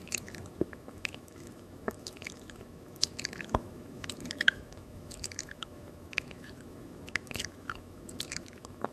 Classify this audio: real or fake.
fake